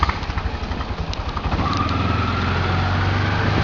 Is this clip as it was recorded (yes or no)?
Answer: yes